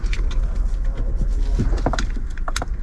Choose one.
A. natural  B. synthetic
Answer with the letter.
A